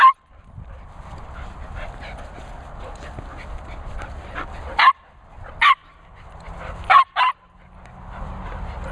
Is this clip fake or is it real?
real